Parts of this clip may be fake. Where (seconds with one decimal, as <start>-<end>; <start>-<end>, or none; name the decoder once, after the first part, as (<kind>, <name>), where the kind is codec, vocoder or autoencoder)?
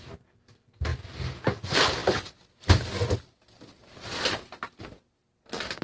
none